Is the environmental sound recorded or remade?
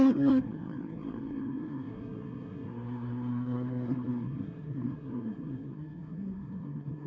remade